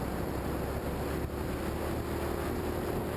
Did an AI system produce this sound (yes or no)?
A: no